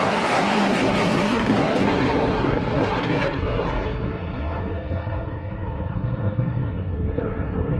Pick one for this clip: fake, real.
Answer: fake